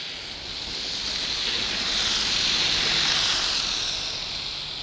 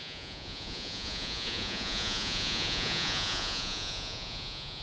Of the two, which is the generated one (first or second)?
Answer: second